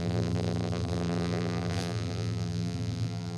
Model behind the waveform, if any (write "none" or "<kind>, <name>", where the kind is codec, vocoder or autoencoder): vocoder, BigVGAN v2